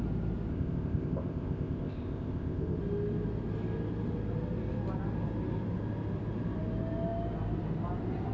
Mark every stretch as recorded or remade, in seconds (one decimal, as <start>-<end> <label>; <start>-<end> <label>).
0.0-0.5 recorded; 0.5-2.8 remade; 2.8-8.3 recorded